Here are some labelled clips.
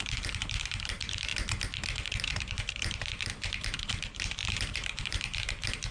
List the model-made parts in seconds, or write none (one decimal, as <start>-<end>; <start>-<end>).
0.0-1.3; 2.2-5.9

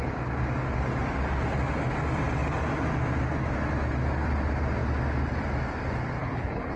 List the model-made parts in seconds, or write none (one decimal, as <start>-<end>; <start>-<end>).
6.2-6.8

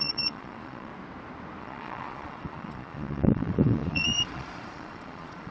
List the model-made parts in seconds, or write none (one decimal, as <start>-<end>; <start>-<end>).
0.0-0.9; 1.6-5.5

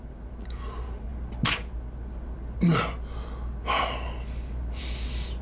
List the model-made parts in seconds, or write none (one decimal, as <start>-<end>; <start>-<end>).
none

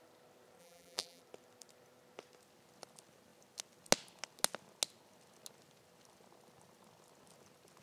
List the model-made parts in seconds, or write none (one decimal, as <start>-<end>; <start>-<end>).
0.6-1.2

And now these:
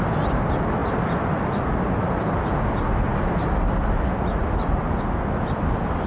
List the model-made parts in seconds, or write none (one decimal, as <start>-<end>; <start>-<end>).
none

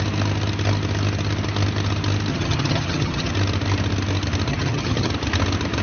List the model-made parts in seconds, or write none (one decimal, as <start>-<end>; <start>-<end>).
2.3-3.3; 4.5-5.1

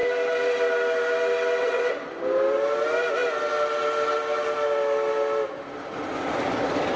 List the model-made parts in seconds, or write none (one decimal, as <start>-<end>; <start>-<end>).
1.6-2.1